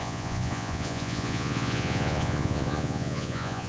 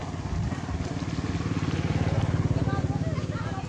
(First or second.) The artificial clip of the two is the first